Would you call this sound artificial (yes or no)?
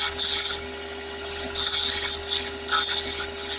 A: no